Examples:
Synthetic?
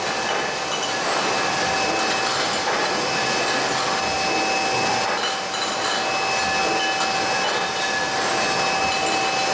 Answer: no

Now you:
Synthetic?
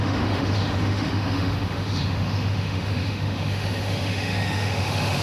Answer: yes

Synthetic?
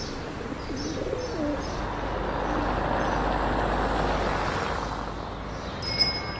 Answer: no